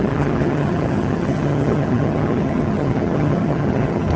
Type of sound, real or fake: fake